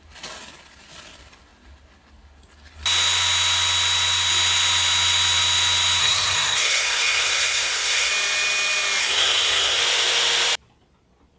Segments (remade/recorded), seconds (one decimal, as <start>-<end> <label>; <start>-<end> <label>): 0.0-6.0 recorded; 6.0-8.1 remade; 8.1-9.0 recorded; 9.0-9.8 remade; 9.8-11.4 recorded